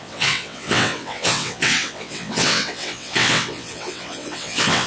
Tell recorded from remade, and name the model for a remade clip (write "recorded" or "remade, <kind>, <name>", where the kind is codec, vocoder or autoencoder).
remade, vocoder, WaveNeXt